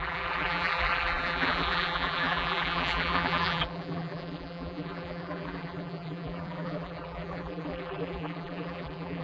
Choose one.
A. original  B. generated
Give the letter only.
B